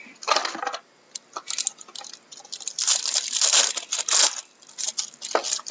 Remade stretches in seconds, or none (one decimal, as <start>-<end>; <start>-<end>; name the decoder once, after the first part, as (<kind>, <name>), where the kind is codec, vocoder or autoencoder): none